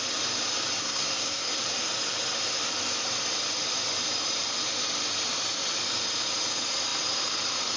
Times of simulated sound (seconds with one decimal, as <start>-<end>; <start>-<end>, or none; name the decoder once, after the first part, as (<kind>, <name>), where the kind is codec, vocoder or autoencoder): 0.8-1.6 (codec, SNAC)